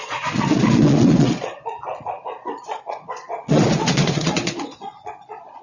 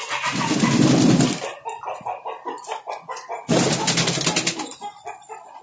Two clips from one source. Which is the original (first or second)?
second